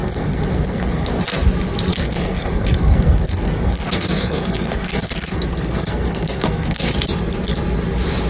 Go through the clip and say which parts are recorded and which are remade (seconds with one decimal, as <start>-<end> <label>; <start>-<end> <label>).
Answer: 0.0-1.2 remade; 1.2-1.9 recorded; 1.9-6.9 remade; 6.9-8.3 recorded